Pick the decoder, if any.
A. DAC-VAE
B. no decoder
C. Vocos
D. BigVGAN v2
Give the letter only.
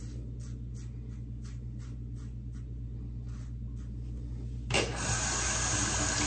B